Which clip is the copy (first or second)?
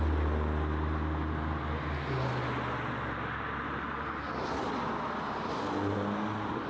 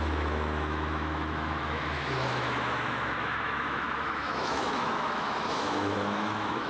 second